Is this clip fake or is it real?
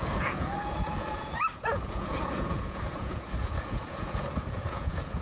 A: fake